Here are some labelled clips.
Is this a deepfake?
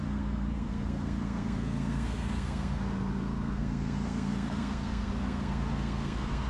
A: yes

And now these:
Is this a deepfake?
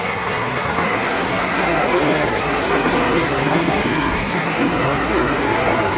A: yes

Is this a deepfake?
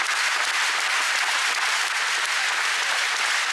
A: no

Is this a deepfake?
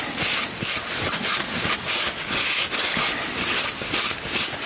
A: no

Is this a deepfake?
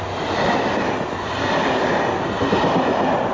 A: no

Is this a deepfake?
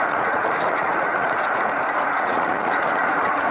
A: yes